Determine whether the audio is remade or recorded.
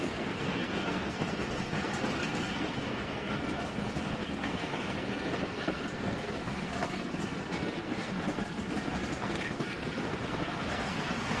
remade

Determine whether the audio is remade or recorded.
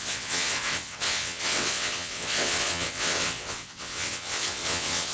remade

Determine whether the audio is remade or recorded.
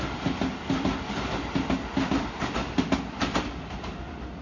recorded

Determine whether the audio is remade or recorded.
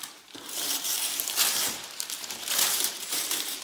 remade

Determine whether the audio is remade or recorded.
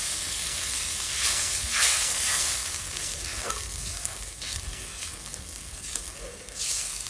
remade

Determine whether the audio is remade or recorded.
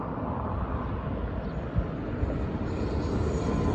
recorded